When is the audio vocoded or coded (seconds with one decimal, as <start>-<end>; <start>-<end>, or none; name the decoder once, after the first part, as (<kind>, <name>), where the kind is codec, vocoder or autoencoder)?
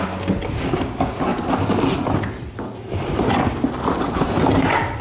none